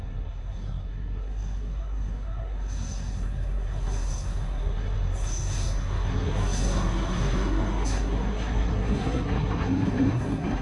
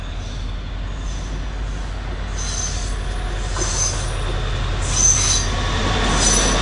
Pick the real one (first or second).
second